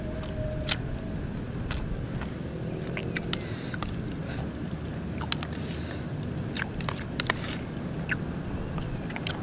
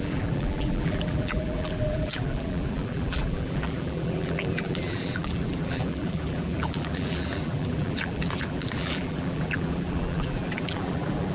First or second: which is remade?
second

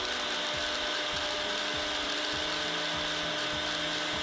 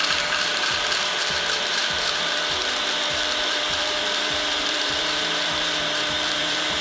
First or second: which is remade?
second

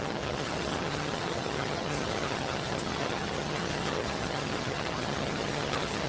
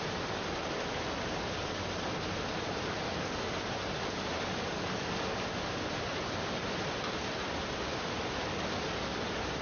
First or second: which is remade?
first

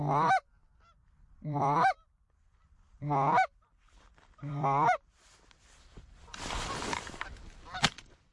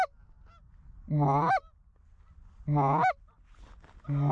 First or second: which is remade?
first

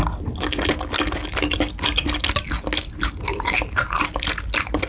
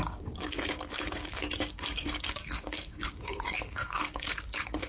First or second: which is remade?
second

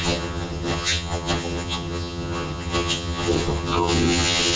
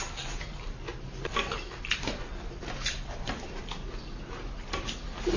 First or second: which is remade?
first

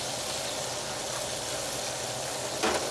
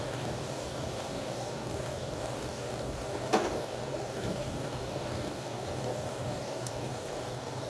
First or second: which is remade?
second